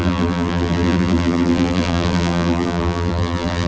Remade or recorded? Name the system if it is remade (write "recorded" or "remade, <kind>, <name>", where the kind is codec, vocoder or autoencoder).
remade, vocoder, BigVGAN v2